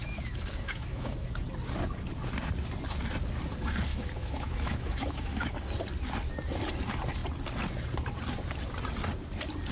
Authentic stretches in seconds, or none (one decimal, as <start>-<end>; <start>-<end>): 1.4-3.9; 5.5-9.7